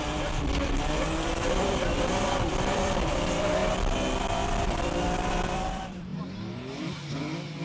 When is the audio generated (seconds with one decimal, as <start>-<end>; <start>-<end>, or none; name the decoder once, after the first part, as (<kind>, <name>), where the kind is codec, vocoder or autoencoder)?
0.0-6.1 (vocoder, BigVGAN v2); 7.1-7.6